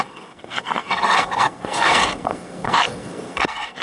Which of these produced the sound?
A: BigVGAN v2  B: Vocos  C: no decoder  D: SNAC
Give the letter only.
D